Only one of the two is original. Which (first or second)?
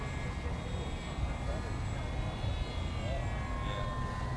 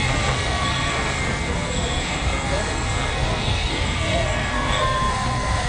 first